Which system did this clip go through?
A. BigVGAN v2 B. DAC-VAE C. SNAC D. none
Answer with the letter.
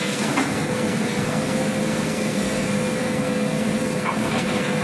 C